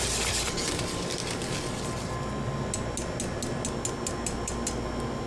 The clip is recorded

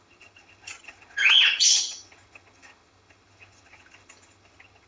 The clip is remade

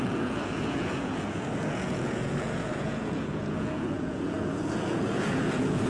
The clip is remade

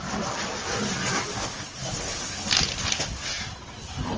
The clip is recorded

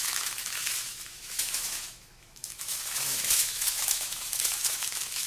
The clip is remade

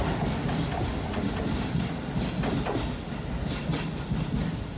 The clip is recorded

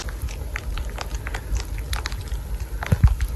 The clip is recorded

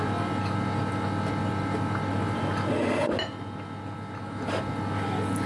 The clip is recorded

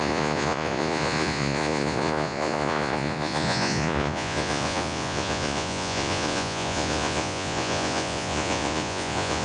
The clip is remade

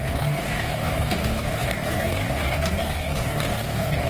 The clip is remade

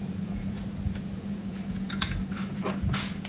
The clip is remade